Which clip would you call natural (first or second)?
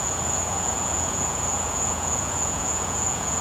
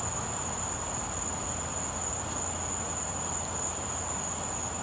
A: second